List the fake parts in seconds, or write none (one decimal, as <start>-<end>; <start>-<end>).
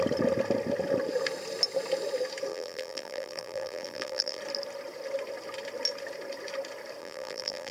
2.5-4.4; 7.0-7.7